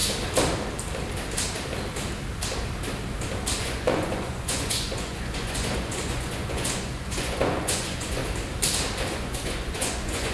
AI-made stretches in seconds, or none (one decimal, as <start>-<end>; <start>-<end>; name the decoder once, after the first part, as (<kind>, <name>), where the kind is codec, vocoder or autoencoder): 3.6-8.2 (vocoder, Vocos); 9.1-10.3